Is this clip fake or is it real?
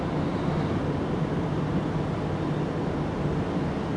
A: real